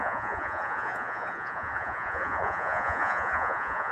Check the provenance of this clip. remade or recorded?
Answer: remade